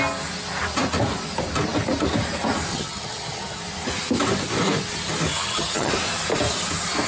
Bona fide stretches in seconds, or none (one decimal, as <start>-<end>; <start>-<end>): 0.0-2.7; 3.6-5.3; 5.9-7.1